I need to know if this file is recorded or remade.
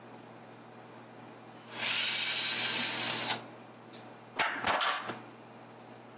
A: recorded